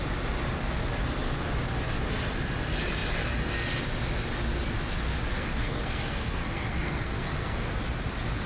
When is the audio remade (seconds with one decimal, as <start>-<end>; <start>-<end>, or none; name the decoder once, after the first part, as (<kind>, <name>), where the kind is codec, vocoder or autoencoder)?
5.3-7.7 (codec, SNAC)